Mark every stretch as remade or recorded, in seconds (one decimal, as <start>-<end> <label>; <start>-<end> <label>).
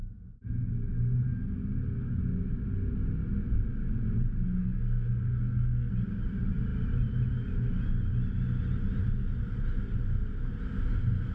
0.0-4.6 recorded; 4.6-5.9 remade; 5.9-11.3 recorded